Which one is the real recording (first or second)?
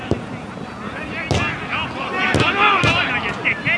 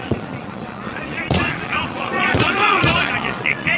first